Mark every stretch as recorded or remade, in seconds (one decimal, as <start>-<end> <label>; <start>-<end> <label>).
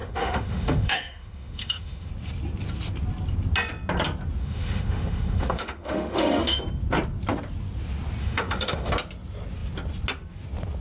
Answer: 0.0-2.1 remade; 2.1-4.4 recorded; 4.4-6.6 remade; 6.6-8.2 recorded; 8.2-8.9 remade; 8.9-10.8 recorded